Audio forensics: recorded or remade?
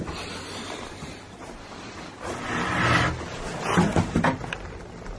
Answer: recorded